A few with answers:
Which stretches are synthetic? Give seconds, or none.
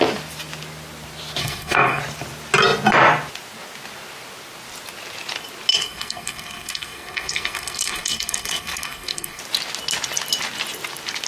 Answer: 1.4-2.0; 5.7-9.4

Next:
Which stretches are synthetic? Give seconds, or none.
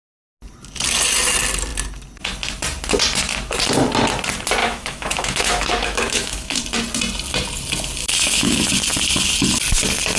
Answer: 4.6-6.6; 8.0-8.6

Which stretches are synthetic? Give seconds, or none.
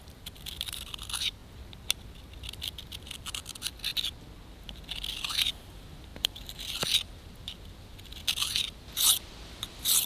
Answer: 0.0-1.4; 3.1-3.9; 5.3-10.1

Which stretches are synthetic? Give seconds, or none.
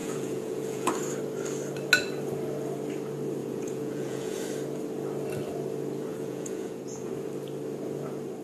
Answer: 0.0-0.9; 3.4-4.4; 6.1-7.1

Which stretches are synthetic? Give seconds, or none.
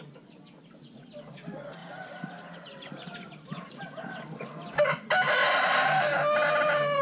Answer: 1.8-3.8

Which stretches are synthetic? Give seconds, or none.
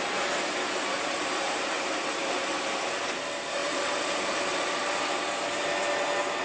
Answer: 0.9-1.7; 3.6-5.0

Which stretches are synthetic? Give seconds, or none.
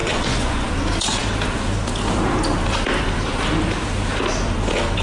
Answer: 0.0-0.7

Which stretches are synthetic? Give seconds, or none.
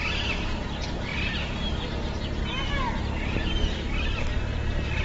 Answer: none